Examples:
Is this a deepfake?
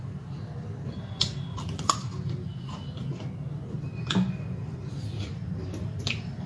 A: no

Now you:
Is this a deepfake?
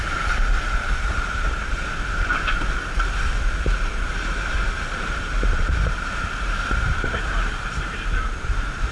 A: yes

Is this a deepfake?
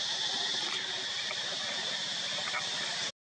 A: no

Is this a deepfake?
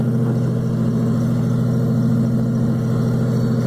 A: no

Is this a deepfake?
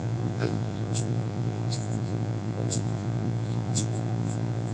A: yes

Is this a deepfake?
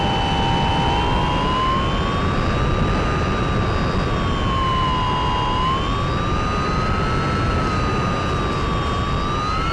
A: no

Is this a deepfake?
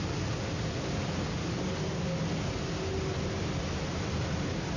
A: no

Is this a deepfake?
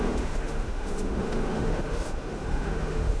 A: yes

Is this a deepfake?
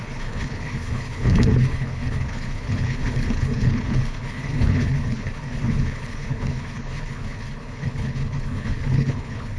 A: yes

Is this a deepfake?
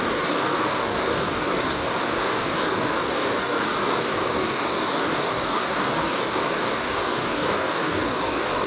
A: yes